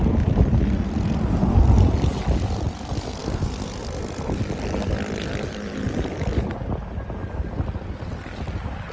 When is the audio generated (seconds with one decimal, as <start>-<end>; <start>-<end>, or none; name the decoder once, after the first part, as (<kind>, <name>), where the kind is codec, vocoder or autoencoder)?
none